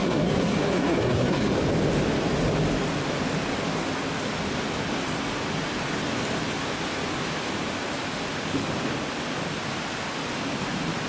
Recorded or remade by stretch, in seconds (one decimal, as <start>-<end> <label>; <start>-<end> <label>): 0.0-1.5 remade; 1.5-11.1 recorded